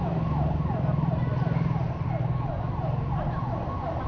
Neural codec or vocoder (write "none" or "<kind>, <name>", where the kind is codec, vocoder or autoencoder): none